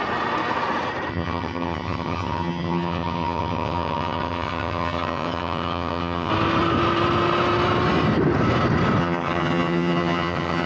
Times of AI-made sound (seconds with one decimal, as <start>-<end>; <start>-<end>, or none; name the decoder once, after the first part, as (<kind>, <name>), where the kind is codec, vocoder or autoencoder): 1.1-6.3 (vocoder, HiFi-GAN); 9.0-10.7